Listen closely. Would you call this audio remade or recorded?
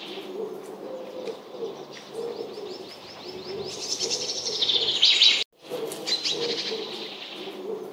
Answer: recorded